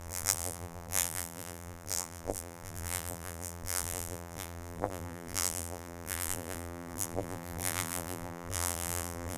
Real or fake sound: fake